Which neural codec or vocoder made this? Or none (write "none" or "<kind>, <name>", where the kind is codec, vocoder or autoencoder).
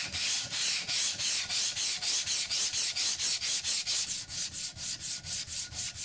none